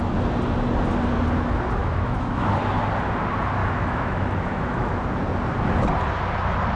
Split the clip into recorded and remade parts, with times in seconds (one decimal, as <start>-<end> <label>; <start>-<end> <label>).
0.0-1.8 recorded; 1.8-2.5 remade; 2.5-3.6 recorded; 3.6-5.0 remade; 5.0-6.8 recorded

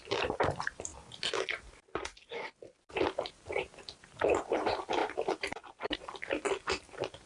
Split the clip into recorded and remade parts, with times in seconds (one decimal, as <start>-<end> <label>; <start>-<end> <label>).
0.0-0.9 remade; 0.9-4.2 recorded; 4.2-6.1 remade; 6.1-6.8 recorded; 6.8-7.3 remade

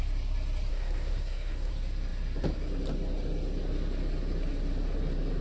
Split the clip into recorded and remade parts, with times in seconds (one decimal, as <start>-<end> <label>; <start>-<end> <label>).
0.0-0.7 recorded; 0.7-1.7 remade; 1.7-5.4 recorded